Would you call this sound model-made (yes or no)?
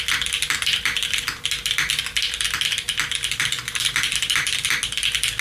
no